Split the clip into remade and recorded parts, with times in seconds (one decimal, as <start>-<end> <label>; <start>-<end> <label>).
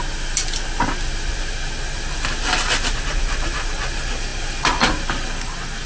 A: 0.0-5.9 recorded